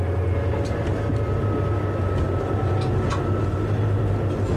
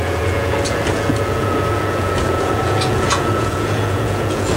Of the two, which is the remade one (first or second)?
second